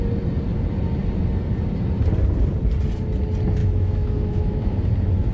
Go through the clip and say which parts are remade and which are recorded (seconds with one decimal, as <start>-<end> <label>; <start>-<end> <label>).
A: 0.0-3.6 recorded; 3.6-4.8 remade; 4.8-5.3 recorded